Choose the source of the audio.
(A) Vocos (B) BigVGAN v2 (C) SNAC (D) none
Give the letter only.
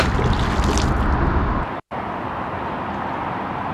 D